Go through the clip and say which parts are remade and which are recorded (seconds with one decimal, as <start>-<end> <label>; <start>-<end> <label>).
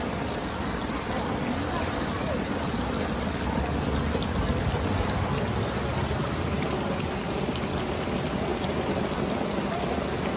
0.0-10.4 recorded